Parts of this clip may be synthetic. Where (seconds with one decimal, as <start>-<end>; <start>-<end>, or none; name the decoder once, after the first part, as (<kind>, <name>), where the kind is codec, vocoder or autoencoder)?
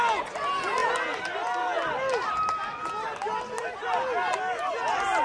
none